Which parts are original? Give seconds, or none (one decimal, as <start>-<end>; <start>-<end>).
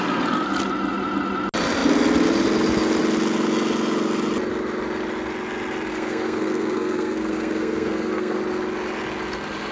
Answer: 0.0-5.9; 8.4-9.7